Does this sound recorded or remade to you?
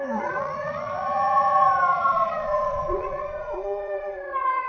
remade